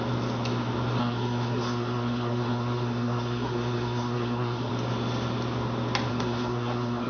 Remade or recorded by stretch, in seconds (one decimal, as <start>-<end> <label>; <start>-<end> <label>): 0.0-1.0 recorded; 1.0-4.7 remade; 4.7-6.1 recorded; 6.1-7.1 remade

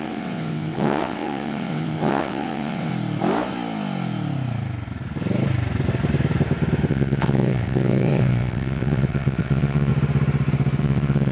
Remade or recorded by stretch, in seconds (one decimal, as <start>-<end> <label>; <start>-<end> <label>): 0.0-2.9 remade; 2.9-6.9 recorded; 6.9-9.9 remade; 9.9-10.8 recorded; 10.8-11.3 remade

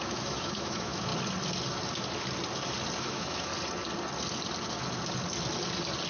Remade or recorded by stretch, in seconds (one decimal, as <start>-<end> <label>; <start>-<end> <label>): 0.0-1.1 remade; 1.1-3.0 recorded; 3.0-3.5 remade; 3.5-6.1 recorded